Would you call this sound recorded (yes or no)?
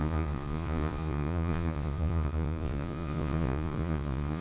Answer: no